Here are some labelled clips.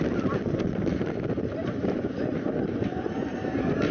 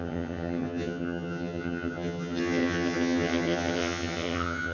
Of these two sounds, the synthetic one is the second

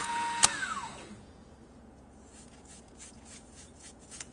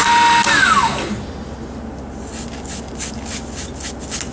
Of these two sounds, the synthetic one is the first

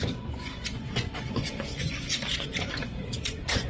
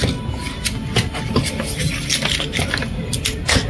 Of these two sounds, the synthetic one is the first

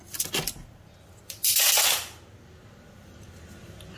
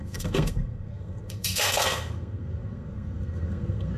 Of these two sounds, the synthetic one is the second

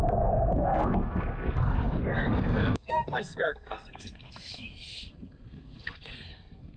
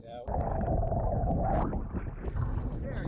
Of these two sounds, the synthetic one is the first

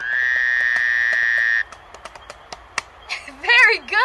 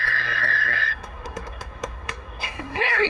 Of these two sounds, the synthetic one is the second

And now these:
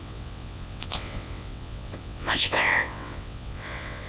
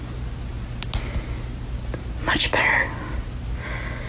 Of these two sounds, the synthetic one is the first